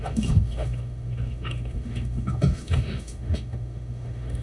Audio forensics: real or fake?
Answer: fake